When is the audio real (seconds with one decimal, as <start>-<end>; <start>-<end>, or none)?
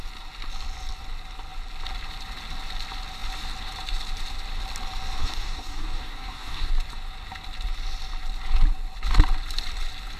0.0-5.2; 6.7-10.2